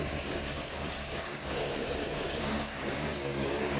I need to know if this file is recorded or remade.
remade